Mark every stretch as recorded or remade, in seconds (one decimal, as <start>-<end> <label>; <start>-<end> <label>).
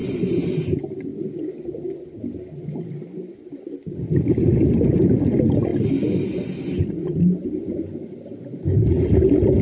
0.0-9.6 recorded